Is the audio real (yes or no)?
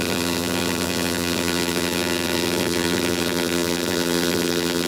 no